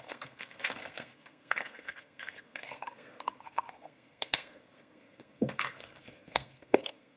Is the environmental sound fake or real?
fake